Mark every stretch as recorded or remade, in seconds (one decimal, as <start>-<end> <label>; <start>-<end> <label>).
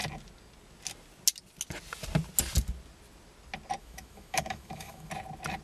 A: 0.0-3.8 recorded; 3.8-5.1 remade; 5.1-5.6 recorded